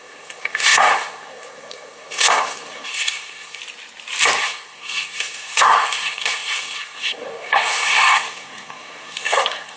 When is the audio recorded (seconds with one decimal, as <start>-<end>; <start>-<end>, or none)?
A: 3.6-4.4